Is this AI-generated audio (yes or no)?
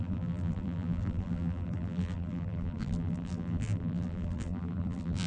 yes